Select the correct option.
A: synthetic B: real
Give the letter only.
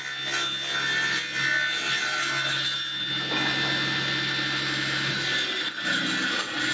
B